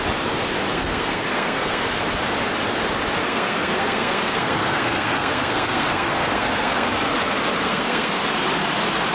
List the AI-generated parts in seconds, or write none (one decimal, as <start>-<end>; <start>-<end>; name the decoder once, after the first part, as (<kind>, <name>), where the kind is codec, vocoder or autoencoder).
0.7-2.0 (codec, SNAC); 3.2-6.9; 7.6-8.2